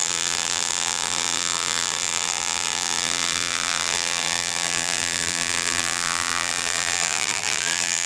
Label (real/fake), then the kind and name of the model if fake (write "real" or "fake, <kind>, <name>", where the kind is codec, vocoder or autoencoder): fake, vocoder, BigVGAN v2